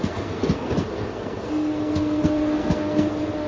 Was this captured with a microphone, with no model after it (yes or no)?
no